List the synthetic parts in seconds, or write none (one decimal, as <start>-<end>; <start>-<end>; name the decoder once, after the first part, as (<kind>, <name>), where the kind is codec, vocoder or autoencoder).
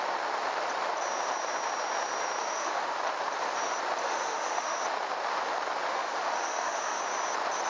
2.4-2.9 (autoencoder, DAC-VAE); 4.0-4.8; 5.9-7.0